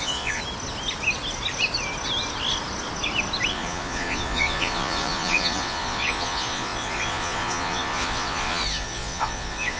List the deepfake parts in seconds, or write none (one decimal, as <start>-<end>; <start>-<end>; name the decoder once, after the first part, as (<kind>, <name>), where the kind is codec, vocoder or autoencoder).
0.0-0.4 (vocoder, Vocos); 3.5-9.8